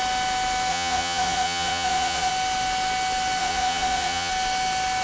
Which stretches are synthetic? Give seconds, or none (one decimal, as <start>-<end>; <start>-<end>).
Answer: 0.7-2.3; 3.4-4.3